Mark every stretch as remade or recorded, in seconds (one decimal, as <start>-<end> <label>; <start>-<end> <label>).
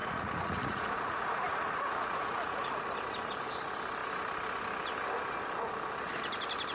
0.0-2.9 remade; 2.9-6.7 recorded